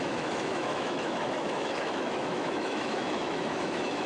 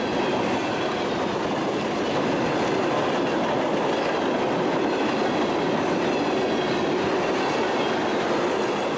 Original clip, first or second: second